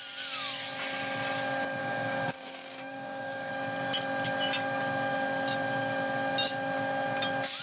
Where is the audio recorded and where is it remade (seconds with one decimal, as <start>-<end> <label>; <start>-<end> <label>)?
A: 0.0-1.8 recorded; 1.8-3.5 remade; 3.5-7.6 recorded